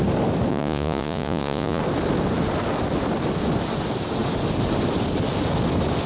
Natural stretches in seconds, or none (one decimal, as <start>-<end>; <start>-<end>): 0.0-0.5; 1.8-6.1